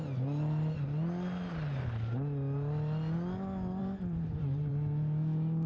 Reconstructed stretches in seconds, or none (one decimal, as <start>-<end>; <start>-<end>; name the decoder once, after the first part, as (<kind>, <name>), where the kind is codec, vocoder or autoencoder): 3.8-4.7 (vocoder, BigVGAN v2)